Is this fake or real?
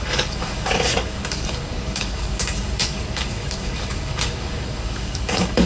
fake